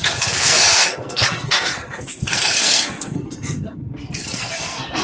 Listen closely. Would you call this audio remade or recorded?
remade